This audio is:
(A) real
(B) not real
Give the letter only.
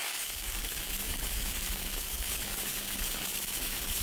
B